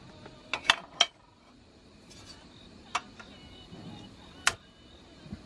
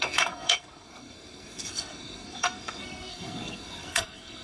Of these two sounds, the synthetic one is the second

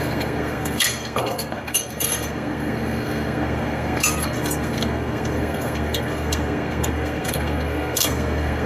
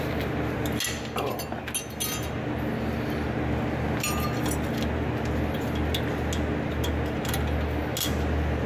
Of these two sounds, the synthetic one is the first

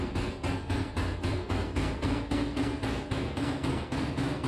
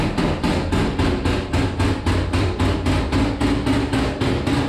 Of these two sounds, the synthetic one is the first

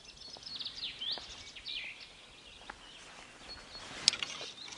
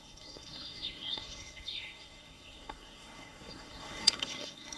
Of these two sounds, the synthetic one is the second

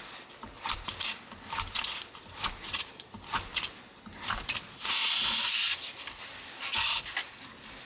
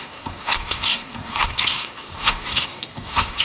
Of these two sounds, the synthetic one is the second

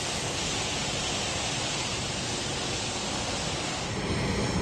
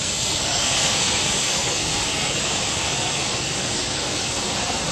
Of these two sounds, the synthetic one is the second